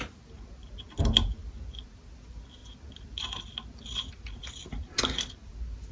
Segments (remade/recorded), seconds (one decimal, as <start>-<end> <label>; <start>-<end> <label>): 0.0-5.9 recorded